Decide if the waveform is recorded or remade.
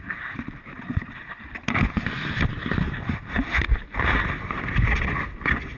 recorded